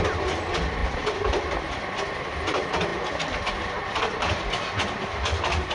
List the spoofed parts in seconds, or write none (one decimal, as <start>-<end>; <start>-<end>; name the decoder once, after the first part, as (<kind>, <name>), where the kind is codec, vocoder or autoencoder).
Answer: none